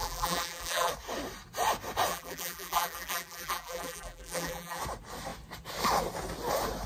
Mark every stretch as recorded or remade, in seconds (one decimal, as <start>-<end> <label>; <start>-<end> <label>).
0.0-0.9 remade; 0.9-2.1 recorded; 2.1-4.8 remade; 4.8-6.9 recorded